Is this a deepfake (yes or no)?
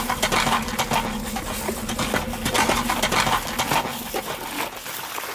no